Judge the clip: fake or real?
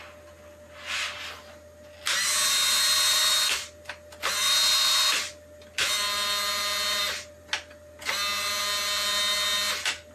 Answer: real